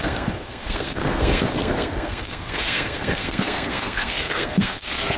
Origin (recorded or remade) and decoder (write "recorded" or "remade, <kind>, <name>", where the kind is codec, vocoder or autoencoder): remade, codec, SNAC